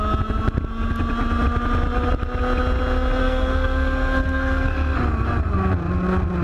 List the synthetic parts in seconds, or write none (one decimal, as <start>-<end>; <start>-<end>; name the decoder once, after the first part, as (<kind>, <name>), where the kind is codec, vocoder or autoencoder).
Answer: 3.2-5.0 (codec, SNAC)